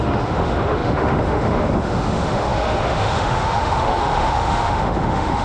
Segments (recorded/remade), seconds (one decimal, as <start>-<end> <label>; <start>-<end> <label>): 0.0-5.4 remade